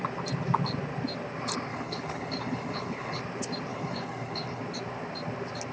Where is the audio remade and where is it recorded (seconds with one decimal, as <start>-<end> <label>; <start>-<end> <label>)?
0.0-1.7 recorded; 1.7-3.2 remade; 3.2-3.7 recorded; 3.7-4.6 remade; 4.6-5.7 recorded